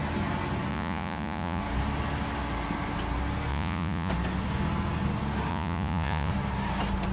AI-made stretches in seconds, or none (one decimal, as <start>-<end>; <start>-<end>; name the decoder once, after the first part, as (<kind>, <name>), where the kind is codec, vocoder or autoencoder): 0.7-1.6 (vocoder, Vocos); 3.5-4.1; 5.5-6.3